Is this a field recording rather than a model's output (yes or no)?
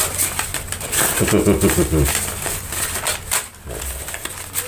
yes